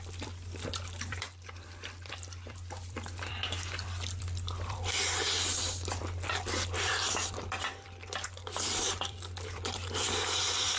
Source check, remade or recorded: remade